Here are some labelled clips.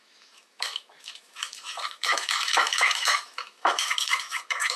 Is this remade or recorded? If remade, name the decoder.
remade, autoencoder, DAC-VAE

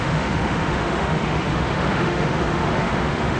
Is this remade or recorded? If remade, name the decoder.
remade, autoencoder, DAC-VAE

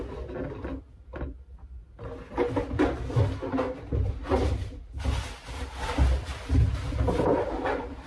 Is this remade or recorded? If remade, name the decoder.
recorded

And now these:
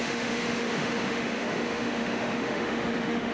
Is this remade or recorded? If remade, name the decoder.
remade, autoencoder, DAC-VAE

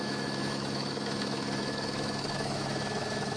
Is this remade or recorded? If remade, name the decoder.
remade, autoencoder, DAC-VAE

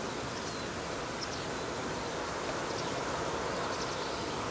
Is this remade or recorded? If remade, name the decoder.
recorded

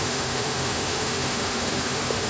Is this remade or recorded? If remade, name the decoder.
remade, autoencoder, DAC-VAE